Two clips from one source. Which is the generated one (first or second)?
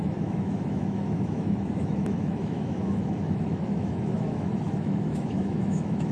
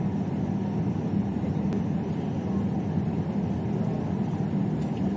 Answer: first